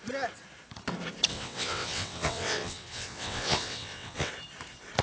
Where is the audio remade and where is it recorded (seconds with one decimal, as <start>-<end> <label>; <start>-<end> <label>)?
0.0-1.3 recorded; 1.3-4.3 remade; 4.3-5.0 recorded